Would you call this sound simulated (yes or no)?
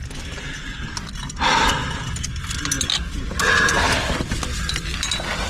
no